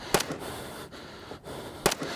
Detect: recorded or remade recorded